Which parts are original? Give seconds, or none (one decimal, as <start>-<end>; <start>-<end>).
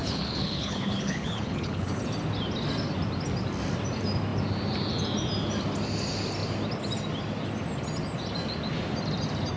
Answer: 2.0-9.6